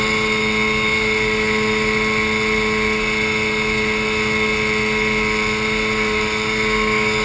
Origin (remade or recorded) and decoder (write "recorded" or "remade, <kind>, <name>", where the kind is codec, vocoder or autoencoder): recorded